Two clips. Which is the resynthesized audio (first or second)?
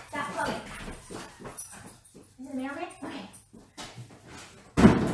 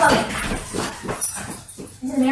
second